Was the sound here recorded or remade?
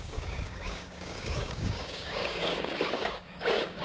remade